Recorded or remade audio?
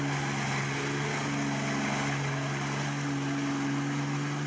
recorded